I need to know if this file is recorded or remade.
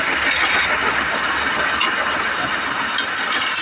recorded